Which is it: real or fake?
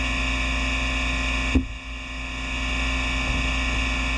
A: real